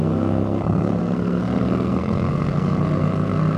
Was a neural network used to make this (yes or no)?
yes